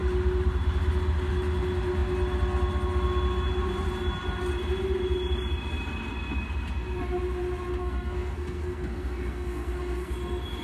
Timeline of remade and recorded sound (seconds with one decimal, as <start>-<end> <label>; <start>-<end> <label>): 0.0-7.8 recorded; 7.8-10.1 remade; 10.1-10.6 recorded